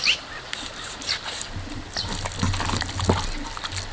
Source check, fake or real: real